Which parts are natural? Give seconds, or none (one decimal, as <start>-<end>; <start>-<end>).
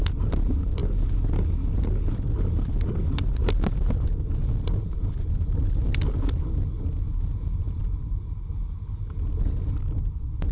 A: 0.0-10.5